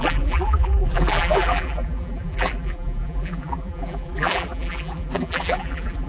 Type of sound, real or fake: fake